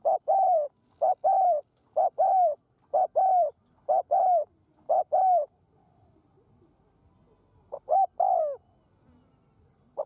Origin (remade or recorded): recorded